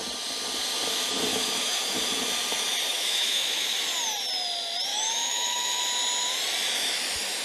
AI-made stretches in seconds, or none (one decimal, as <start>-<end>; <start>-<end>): 1.3-2.2; 2.9-3.8; 4.9-5.8